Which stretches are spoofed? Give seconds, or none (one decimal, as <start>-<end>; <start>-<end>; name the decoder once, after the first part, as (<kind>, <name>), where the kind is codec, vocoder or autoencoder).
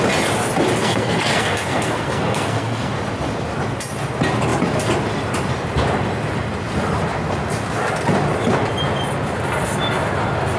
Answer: 0.8-2.9 (codec, SNAC)